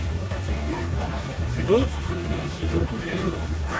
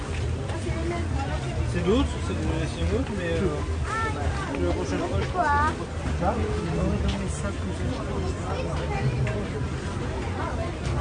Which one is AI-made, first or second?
first